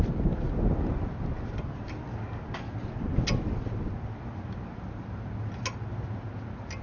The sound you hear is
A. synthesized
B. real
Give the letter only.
B